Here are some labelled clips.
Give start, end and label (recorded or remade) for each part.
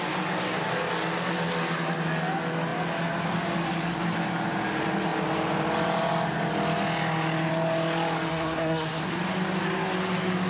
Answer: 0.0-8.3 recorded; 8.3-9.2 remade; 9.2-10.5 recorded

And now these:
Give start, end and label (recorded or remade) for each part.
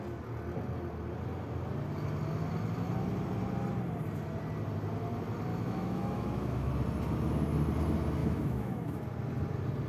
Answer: 0.0-5.5 recorded; 5.5-6.7 remade; 6.7-8.2 recorded; 8.2-9.0 remade; 9.0-9.9 recorded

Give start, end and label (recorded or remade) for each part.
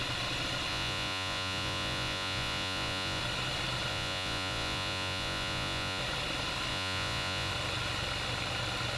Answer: 0.0-0.7 recorded; 0.7-3.2 remade; 3.2-3.9 recorded; 3.9-6.0 remade; 6.0-6.7 recorded; 6.7-7.5 remade; 7.5-9.0 recorded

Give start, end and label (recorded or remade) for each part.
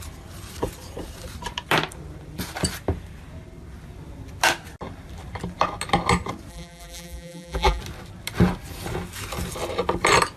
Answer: 0.0-6.5 recorded; 6.5-7.8 remade; 7.8-10.4 recorded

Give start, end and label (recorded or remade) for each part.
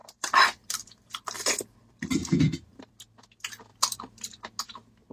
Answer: 0.0-2.9 remade; 2.9-3.7 recorded; 3.7-4.6 remade; 4.6-5.1 recorded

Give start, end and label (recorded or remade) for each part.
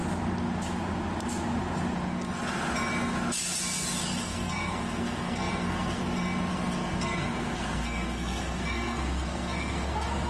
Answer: 0.0-4.2 recorded; 4.2-6.0 remade; 6.0-6.5 recorded; 6.5-10.3 remade